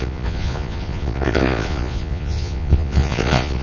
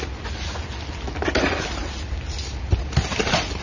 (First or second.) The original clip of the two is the second